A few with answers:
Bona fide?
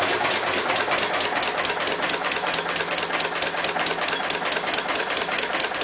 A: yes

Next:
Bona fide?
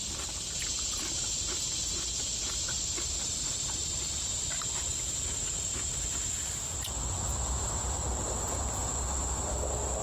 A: yes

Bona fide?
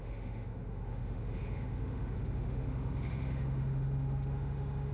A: no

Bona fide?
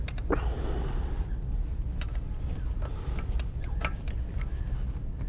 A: yes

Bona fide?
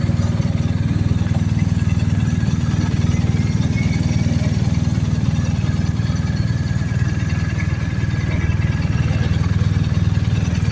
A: yes